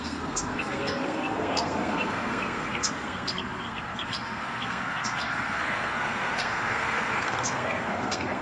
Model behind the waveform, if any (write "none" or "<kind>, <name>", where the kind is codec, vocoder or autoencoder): codec, SNAC